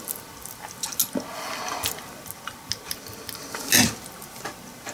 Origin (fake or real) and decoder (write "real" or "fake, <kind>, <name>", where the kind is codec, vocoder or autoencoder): real